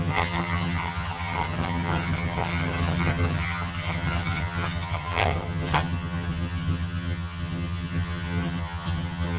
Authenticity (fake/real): fake